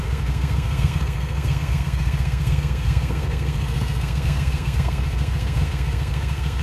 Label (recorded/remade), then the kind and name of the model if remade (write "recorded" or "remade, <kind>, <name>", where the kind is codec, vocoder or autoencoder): remade, codec, SNAC